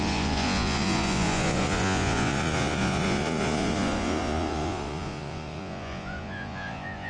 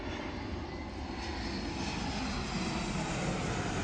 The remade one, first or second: first